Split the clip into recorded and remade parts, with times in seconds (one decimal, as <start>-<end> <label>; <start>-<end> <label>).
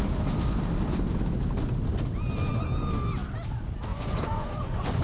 0.0-3.9 recorded; 3.9-5.0 remade